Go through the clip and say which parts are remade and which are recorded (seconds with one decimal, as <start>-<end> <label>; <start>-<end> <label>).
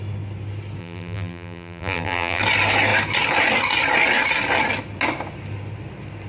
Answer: 0.0-0.8 recorded; 0.8-2.4 remade; 2.4-6.3 recorded